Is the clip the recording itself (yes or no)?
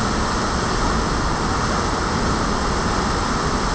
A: yes